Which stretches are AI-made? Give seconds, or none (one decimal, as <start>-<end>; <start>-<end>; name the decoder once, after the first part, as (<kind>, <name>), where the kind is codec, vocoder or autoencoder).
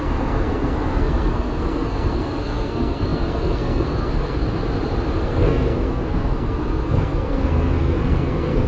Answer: 0.0-4.4 (codec, SNAC); 5.2-8.7